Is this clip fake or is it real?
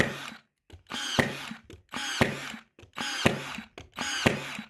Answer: real